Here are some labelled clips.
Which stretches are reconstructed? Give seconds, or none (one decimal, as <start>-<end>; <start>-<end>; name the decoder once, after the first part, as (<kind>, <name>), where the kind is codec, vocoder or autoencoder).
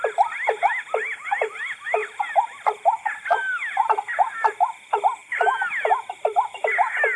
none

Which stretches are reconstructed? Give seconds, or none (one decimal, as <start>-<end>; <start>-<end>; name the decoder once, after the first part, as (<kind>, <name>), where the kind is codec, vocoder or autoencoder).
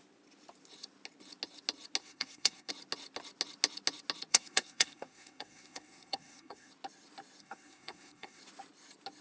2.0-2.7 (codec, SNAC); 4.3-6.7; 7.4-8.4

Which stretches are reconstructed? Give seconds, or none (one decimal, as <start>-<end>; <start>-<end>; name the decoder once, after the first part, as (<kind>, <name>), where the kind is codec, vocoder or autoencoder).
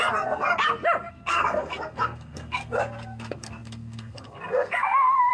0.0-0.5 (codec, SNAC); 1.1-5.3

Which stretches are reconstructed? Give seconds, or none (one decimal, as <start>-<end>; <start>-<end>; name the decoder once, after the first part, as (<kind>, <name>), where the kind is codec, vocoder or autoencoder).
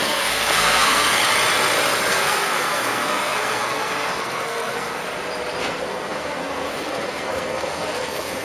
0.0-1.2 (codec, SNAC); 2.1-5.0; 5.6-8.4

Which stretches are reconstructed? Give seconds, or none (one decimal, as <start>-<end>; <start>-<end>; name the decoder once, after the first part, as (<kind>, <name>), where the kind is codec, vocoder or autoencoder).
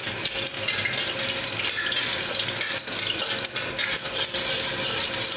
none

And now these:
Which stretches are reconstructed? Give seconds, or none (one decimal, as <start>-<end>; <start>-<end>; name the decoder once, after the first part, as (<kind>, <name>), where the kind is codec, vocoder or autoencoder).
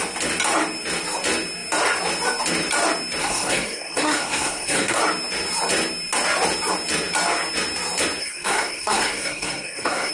3.2-5.0 (codec, SNAC); 8.2-10.1